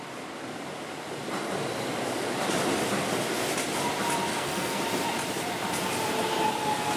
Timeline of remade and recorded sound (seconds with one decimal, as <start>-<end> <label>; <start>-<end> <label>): 0.0-4.3 recorded; 4.3-4.8 remade; 4.8-7.0 recorded